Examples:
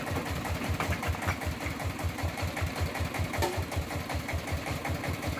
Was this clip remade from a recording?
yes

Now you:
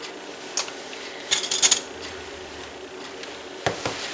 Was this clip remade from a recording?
no